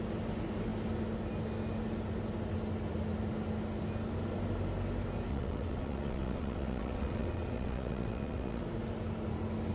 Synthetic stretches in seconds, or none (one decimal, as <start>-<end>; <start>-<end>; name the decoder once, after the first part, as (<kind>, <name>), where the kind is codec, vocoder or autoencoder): 5.3-8.6 (vocoder, WaveNeXt)